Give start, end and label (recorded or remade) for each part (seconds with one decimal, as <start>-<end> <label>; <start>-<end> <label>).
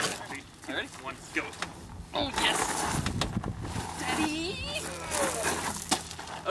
0.0-6.5 recorded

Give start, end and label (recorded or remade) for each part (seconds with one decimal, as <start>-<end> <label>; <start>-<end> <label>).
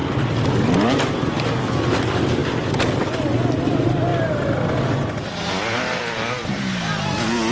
0.0-7.5 recorded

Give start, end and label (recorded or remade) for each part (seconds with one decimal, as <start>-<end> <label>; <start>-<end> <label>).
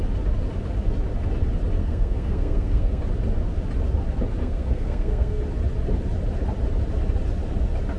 0.0-1.8 recorded; 1.8-3.0 remade; 3.0-4.4 recorded; 4.4-5.4 remade; 5.4-8.0 recorded